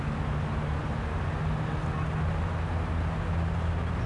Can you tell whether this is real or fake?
real